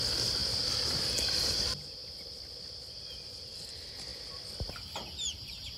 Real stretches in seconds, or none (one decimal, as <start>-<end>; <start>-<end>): 0.0-5.8

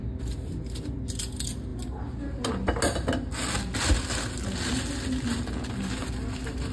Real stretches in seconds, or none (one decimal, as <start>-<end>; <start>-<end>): 0.0-6.7

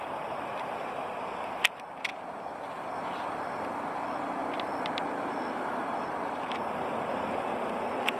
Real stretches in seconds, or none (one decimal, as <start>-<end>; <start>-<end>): 2.1-2.9; 4.4-5.7

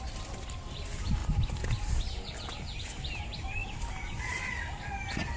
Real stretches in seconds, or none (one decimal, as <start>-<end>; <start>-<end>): 0.0-1.2; 2.3-3.6; 4.3-5.4

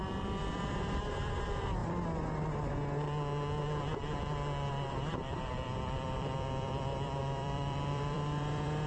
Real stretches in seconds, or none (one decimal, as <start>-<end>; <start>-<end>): 1.8-4.7